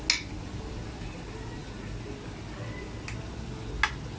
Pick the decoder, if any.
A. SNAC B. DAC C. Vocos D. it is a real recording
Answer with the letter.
D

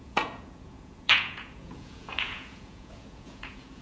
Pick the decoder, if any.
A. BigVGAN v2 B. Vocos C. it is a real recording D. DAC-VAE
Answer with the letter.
B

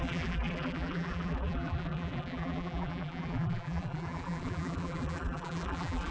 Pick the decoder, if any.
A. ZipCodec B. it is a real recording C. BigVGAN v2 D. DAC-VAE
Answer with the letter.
C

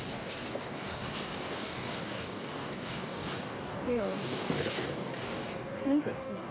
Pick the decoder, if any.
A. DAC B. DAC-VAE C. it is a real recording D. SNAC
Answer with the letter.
A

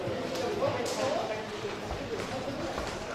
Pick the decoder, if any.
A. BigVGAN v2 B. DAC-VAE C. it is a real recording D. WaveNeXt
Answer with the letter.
A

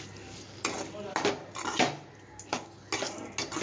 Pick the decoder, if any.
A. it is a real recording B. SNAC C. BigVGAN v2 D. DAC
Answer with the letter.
A